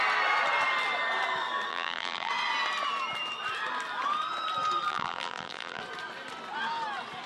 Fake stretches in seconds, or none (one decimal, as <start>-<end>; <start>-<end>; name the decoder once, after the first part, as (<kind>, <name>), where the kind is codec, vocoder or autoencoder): 1.7-2.3 (vocoder, BigVGAN v2); 4.9-5.8